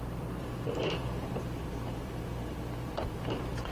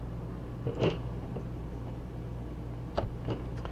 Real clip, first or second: second